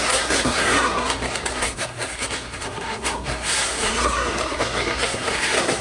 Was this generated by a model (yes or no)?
yes